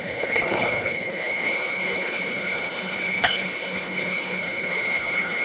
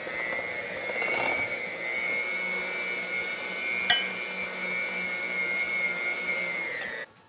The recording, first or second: second